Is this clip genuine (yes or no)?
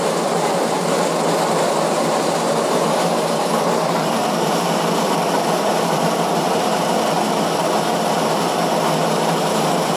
no